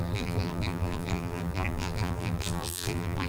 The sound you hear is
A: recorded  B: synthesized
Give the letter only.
B